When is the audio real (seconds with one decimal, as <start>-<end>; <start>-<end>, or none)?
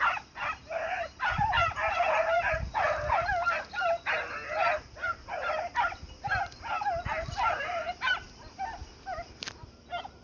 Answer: 0.0-10.2